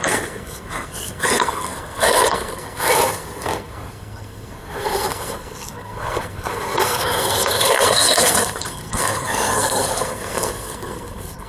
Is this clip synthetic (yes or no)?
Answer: yes